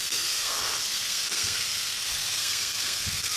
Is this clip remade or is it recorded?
remade